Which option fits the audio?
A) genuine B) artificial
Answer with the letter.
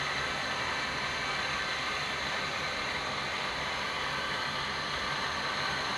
B